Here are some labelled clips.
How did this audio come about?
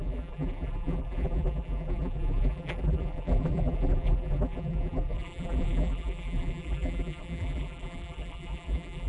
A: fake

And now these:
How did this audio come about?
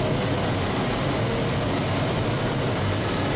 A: real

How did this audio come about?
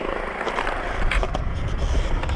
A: fake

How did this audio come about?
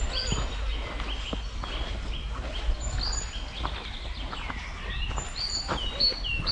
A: real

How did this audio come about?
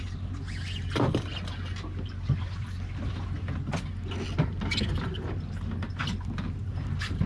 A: real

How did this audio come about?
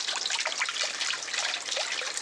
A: fake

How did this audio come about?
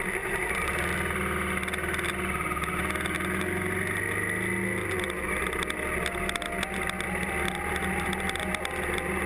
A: real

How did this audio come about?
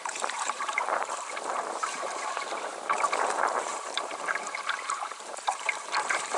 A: fake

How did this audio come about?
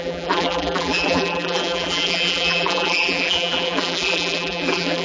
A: fake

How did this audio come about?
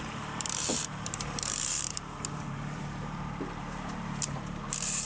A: fake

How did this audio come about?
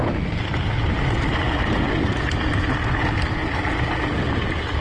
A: real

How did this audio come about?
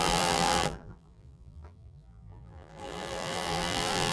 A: fake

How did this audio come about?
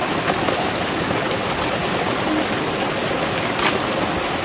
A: real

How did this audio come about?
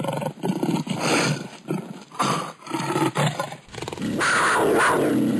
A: real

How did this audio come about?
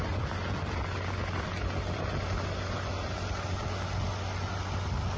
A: real